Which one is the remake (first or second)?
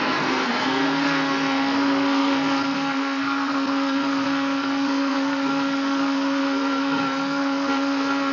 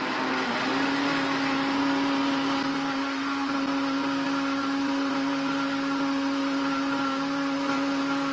first